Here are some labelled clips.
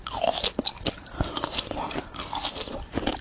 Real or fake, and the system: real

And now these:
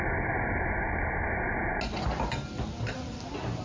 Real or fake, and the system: real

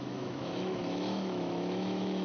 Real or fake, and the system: fake, autoencoder, DAC-VAE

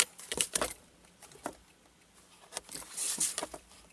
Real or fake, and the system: fake, vocoder, BigVGAN v2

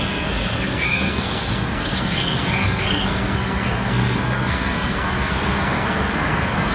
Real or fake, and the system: fake, codec, SNAC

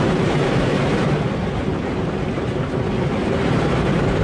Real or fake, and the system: fake, vocoder, BigVGAN v2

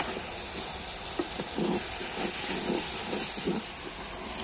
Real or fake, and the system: real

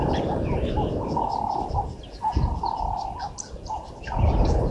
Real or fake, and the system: real